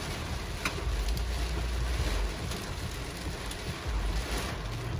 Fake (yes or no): no